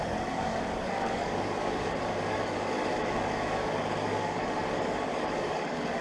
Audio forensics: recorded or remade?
remade